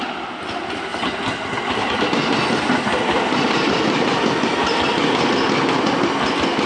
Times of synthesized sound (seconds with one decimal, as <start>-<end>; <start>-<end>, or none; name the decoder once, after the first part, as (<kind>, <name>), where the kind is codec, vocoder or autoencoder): none